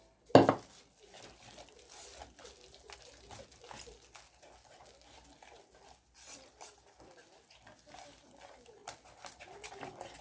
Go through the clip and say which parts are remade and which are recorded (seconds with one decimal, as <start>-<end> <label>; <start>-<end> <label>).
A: 0.0-10.2 recorded